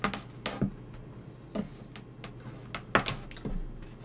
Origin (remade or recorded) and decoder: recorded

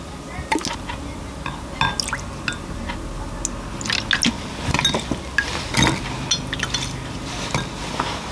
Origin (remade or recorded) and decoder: recorded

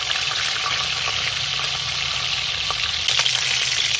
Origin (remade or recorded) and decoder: recorded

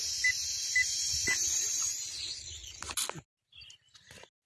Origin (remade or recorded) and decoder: recorded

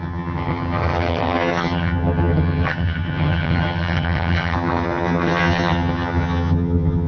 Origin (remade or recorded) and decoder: remade, vocoder, HiFi-GAN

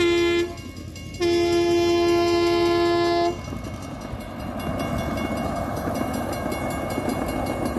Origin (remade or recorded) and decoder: recorded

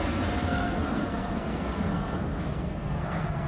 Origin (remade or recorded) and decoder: remade, codec, SNAC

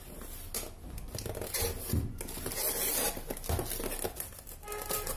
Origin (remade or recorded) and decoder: recorded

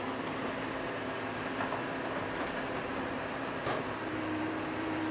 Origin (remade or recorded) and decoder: remade, vocoder, BigVGAN v2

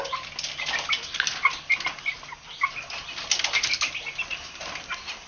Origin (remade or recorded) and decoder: recorded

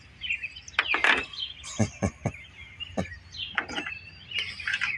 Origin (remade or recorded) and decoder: recorded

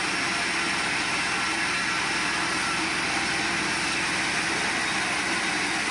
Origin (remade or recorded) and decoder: recorded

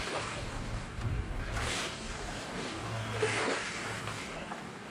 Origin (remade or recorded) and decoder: remade, codec, DAC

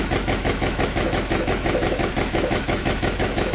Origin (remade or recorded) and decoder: remade, autoencoder, DAC-VAE